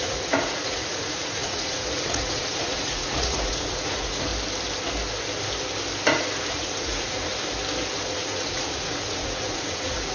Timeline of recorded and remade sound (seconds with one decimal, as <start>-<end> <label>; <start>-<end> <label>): 0.0-4.3 remade; 4.3-6.5 recorded; 6.5-7.3 remade; 7.3-8.1 recorded; 8.1-10.1 remade